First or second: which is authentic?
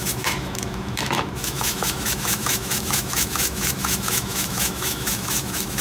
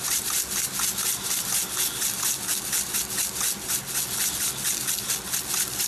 second